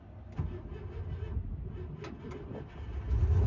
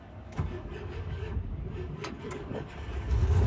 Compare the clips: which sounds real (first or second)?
first